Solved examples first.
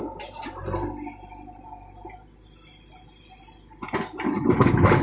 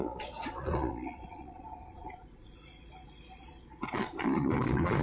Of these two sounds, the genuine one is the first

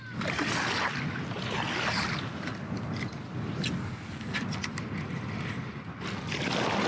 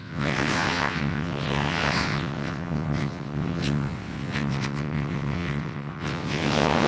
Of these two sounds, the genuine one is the first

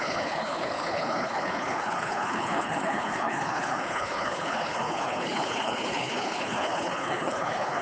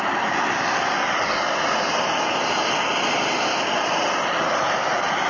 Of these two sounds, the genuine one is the second